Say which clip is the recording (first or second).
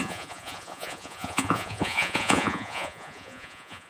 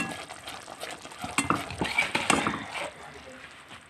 second